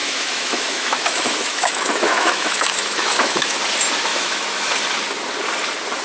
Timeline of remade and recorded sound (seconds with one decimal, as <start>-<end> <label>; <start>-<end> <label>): 0.0-3.6 remade; 3.6-4.1 recorded; 4.1-4.7 remade; 4.7-6.0 recorded